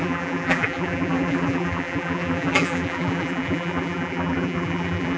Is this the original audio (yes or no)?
no